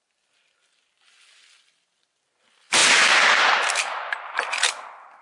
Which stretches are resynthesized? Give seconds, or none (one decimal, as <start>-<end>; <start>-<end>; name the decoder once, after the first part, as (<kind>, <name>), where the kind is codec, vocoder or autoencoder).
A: none